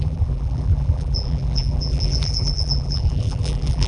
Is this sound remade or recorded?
remade